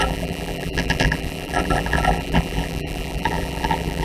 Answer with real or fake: fake